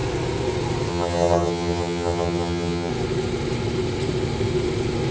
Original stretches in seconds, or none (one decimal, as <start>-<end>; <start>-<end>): 0.0-0.9; 2.9-5.1